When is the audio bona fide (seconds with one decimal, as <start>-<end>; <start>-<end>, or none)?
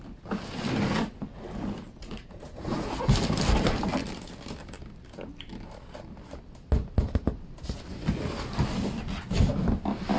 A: 0.0-2.0; 2.9-10.2